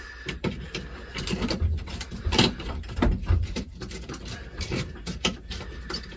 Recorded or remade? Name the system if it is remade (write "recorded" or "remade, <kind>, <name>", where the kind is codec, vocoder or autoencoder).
remade, vocoder, BigVGAN v2